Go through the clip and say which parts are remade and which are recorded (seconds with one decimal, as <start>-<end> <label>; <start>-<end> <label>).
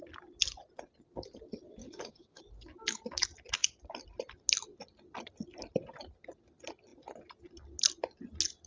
0.0-1.8 recorded; 1.8-2.4 remade; 2.4-8.7 recorded